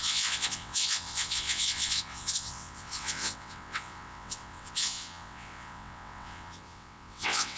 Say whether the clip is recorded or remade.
remade